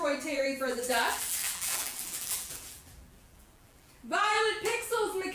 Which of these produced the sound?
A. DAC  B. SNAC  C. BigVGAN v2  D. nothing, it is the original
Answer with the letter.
C